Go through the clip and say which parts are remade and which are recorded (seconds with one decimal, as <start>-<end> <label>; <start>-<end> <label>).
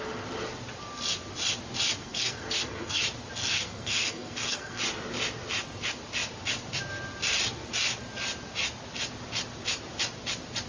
0.0-2.0 recorded; 2.0-3.0 remade; 3.0-3.4 recorded; 3.4-4.8 remade; 4.8-10.7 recorded